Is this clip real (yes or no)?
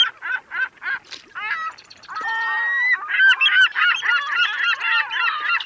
yes